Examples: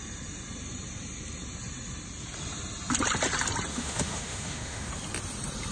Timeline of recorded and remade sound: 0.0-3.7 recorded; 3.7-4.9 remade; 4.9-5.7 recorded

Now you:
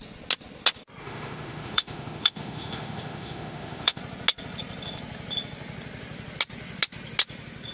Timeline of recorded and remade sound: 0.0-1.0 recorded; 1.0-4.0 remade; 4.0-7.7 recorded